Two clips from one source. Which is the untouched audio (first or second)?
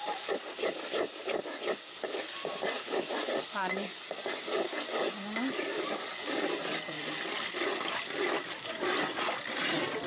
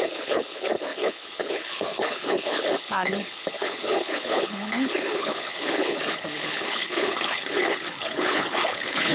first